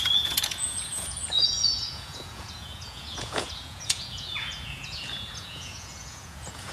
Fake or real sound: fake